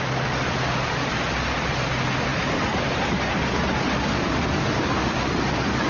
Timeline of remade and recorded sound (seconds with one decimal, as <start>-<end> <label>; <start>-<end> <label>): 0.0-5.9 recorded